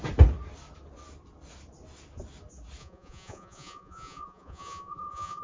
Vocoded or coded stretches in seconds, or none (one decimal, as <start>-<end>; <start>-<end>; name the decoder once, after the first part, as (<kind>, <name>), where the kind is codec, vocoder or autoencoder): 2.8-5.4 (vocoder, Vocos)